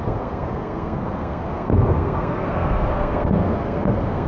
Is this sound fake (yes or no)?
yes